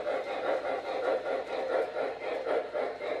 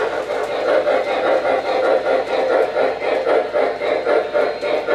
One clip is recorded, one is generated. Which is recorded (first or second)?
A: second